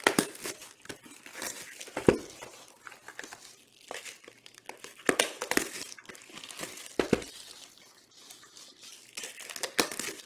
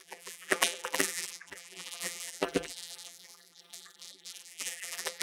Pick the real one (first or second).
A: first